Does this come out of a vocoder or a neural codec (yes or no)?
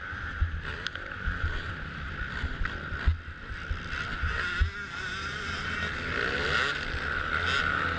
no